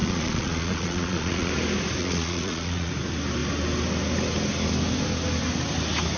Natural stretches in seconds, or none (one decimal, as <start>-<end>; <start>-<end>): 1.5-2.0; 2.9-6.2